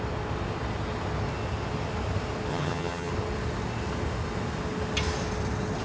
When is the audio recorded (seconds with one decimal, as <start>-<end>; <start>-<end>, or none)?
0.0-2.5; 3.1-5.8